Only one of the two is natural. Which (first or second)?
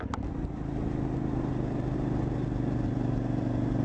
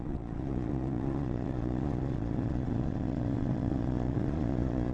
first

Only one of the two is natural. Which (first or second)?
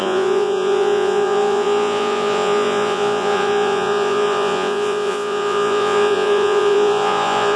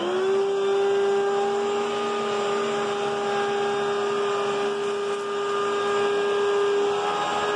second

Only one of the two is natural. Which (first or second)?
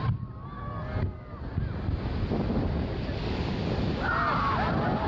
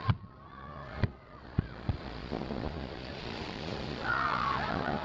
first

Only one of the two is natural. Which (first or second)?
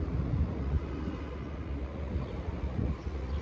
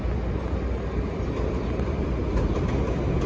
second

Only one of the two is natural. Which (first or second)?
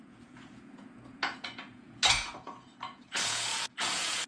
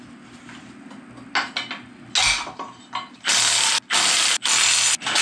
second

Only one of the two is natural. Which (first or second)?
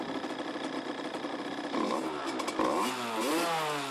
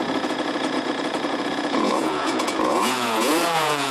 first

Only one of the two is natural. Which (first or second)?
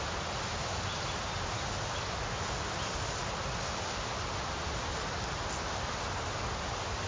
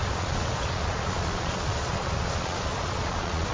first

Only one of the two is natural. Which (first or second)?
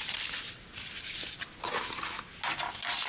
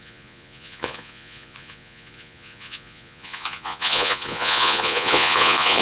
first